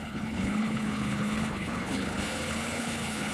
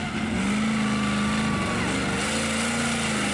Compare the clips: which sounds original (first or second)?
second